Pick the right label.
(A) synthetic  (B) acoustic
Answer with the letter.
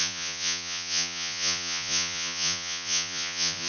A